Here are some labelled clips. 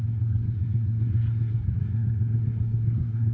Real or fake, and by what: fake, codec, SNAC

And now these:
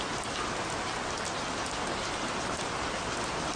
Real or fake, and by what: real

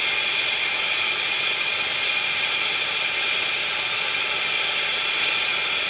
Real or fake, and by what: real